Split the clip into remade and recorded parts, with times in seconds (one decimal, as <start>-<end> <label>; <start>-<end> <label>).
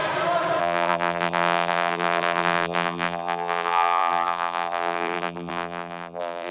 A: 0.0-0.6 recorded; 0.6-6.5 remade